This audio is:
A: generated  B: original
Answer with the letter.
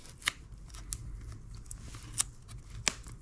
B